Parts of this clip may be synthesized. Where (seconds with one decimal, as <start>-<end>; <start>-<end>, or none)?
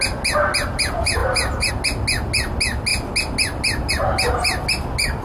none